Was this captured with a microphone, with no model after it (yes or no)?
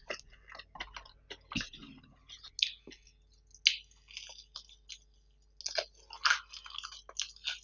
yes